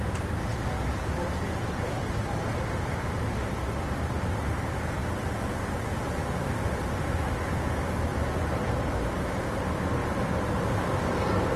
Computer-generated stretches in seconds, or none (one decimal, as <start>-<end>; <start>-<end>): 0.5-2.2; 8.1-9.1; 10.0-11.6